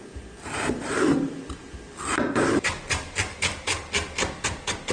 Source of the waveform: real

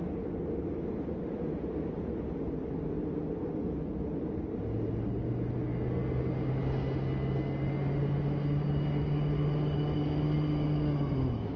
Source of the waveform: real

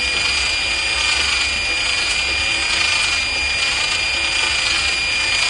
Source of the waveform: real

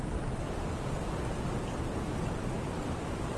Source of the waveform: real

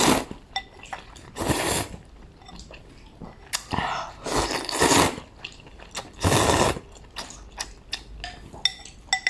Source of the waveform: real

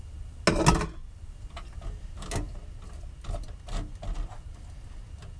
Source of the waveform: real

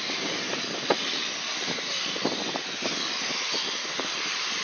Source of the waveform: real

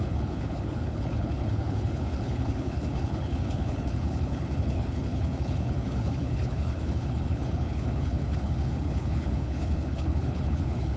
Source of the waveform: fake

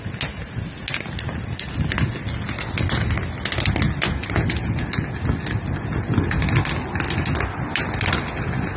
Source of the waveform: real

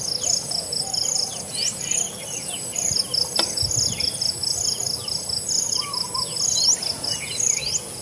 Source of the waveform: real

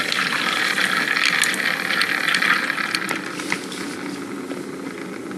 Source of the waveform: real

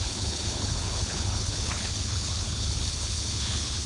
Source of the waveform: fake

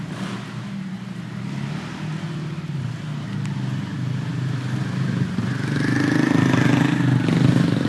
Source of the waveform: real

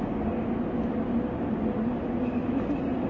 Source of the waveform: real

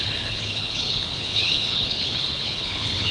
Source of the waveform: fake